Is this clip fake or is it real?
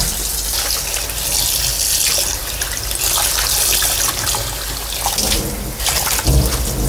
real